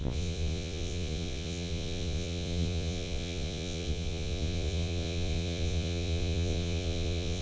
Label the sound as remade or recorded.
remade